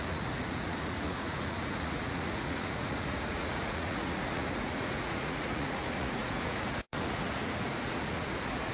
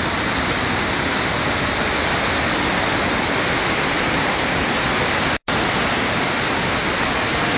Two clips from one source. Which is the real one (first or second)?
second